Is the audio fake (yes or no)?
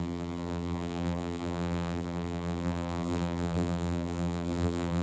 yes